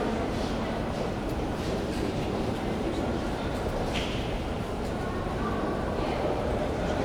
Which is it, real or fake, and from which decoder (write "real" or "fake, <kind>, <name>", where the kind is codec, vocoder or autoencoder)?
fake, vocoder, BigVGAN v2